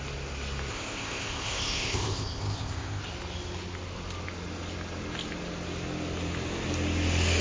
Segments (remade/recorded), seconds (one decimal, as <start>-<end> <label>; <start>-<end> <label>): 0.0-0.7 recorded; 0.7-3.0 remade; 3.0-7.4 recorded